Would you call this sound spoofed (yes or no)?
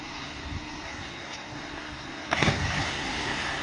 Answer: yes